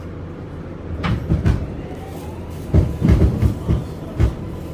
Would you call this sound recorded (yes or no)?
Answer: no